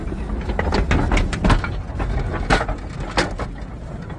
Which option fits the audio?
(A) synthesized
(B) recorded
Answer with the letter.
B